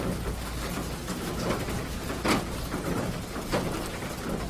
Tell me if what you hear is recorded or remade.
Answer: remade